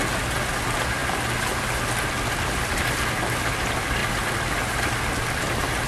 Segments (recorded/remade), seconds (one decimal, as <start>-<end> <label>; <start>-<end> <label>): 0.0-4.0 recorded; 4.0-5.9 remade